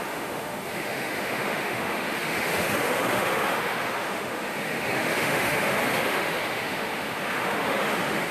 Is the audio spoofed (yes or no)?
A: yes